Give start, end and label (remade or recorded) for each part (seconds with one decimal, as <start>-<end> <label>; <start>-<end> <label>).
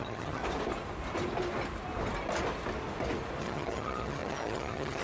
0.0-0.4 remade; 0.4-3.4 recorded; 3.4-5.0 remade